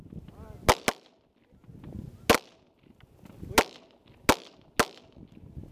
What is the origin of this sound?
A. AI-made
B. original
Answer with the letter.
B